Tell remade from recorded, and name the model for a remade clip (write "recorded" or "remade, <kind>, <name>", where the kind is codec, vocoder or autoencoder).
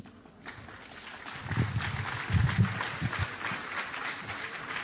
recorded